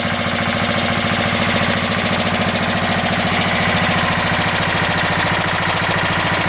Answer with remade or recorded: recorded